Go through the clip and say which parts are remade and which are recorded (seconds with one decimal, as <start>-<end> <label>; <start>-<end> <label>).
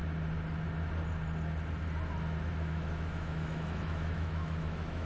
0.0-2.5 recorded; 2.5-5.1 remade